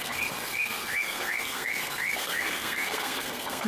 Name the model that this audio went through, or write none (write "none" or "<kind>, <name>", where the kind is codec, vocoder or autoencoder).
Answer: codec, SNAC